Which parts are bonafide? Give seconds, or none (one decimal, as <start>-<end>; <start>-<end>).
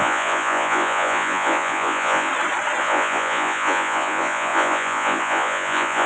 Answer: 2.3-2.8